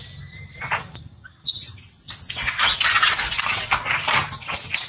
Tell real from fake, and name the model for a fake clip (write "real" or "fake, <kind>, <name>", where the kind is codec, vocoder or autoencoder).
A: real